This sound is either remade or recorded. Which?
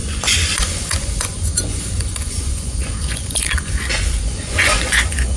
remade